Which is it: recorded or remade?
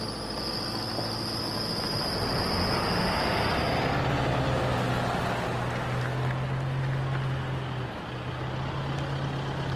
recorded